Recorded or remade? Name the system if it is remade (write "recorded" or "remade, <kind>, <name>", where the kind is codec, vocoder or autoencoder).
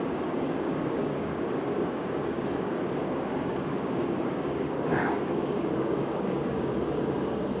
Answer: remade, codec, DAC